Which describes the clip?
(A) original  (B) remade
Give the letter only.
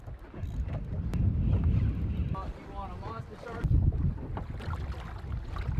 A